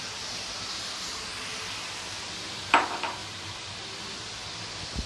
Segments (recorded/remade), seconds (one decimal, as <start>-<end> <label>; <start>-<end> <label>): 0.0-3.2 recorded; 3.2-3.8 remade; 3.8-5.1 recorded